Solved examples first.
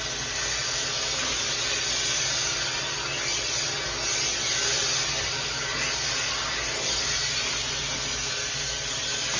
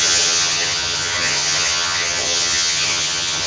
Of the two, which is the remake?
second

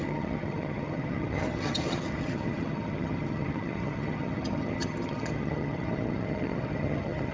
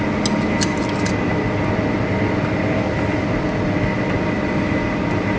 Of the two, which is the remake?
first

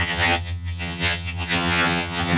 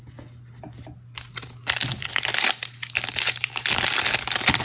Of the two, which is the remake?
first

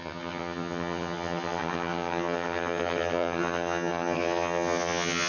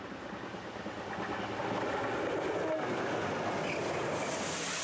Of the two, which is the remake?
first